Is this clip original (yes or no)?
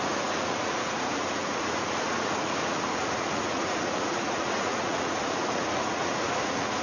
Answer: no